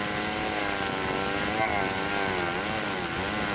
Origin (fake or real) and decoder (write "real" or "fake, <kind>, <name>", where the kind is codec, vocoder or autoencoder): real